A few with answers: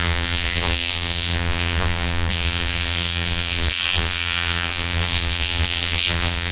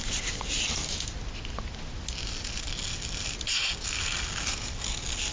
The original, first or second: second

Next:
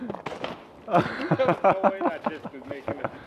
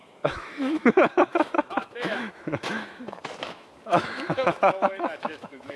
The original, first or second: first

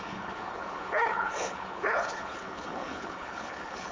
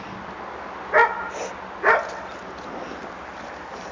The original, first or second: second